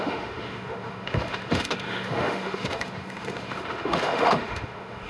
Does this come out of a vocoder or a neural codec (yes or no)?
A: yes